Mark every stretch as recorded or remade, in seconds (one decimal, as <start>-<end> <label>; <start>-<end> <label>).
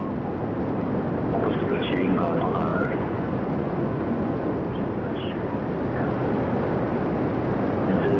0.0-2.7 recorded; 2.7-4.5 remade; 4.5-8.2 recorded